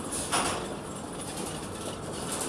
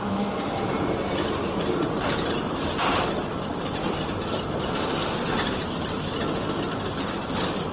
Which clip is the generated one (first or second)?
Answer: second